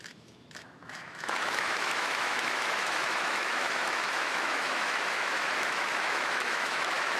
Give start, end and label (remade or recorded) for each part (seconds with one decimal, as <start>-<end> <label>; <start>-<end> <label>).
0.0-7.2 remade